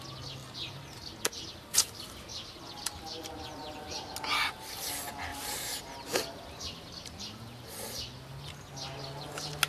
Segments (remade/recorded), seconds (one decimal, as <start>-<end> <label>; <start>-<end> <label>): 0.0-5.3 recorded; 5.3-7.2 remade; 7.2-9.7 recorded

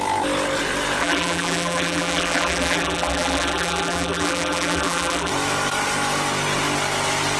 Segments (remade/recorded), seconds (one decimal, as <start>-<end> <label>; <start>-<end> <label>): 0.0-1.0 recorded; 1.0-5.3 remade; 5.3-7.4 recorded

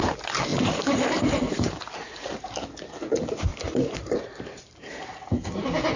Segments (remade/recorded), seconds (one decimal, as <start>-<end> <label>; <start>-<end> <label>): 0.0-0.5 recorded; 0.5-1.8 remade; 1.8-3.5 recorded; 3.5-5.2 remade; 5.2-6.0 recorded

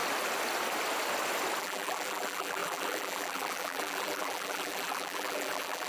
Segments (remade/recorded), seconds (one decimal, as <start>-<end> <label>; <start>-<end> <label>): 0.0-1.6 recorded; 1.6-5.9 remade

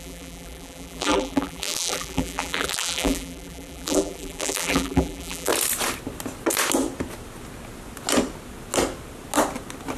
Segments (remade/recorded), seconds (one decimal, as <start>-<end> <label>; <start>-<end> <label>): 0.0-5.5 remade; 5.5-10.0 recorded